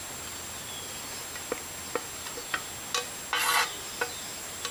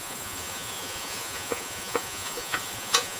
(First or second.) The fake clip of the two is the second